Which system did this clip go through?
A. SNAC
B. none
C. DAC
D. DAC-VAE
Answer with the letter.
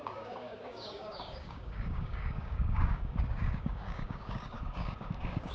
C